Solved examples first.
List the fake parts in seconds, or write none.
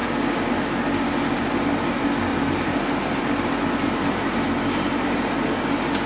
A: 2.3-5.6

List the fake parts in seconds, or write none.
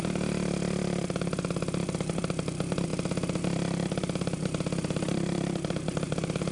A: 0.0-2.9; 3.4-6.5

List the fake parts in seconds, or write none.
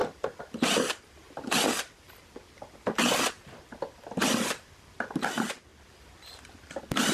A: 0.0-1.0; 4.2-4.7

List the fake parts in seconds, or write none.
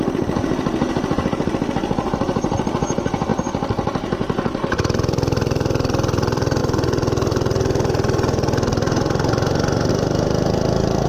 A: 0.0-6.6; 9.9-11.1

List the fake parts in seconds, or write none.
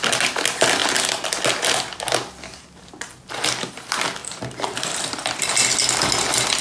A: 4.2-5.5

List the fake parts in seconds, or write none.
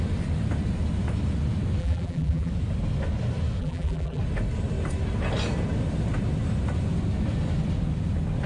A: 1.8-2.5; 3.6-4.2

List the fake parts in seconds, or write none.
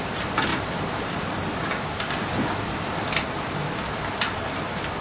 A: 0.5-3.5